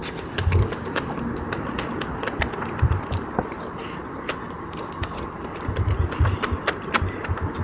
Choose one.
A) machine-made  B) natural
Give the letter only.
B